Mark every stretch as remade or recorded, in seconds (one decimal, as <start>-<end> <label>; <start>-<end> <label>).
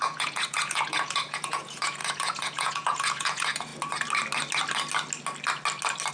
0.0-3.7 remade; 3.7-6.1 recorded